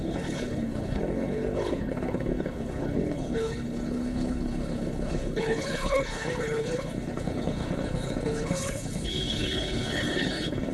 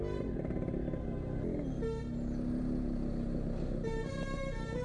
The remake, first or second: first